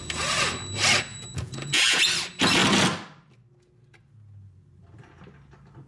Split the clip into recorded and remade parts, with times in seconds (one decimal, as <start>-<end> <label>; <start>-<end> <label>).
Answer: 0.0-1.1 recorded; 1.1-2.1 remade; 2.1-5.9 recorded